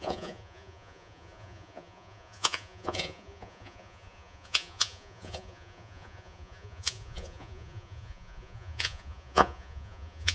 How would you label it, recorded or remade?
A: remade